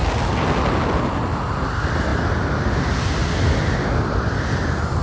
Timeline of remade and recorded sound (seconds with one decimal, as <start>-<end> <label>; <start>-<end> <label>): 0.0-5.0 recorded